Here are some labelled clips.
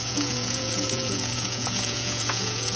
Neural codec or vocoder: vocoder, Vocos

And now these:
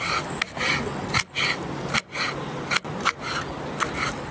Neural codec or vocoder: none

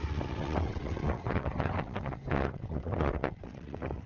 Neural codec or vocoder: vocoder, WaveNeXt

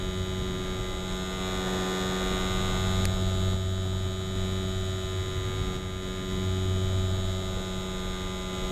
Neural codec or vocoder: none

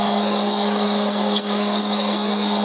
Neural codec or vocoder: codec, SNAC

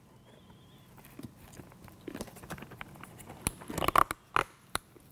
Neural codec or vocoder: none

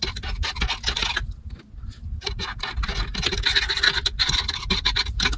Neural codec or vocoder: none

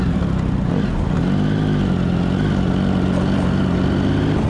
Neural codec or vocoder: none